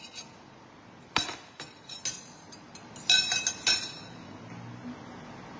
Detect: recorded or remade recorded